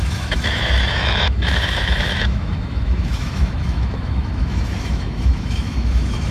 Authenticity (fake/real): fake